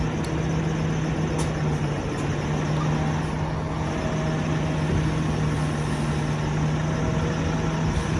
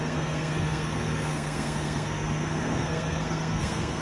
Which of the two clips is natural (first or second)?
first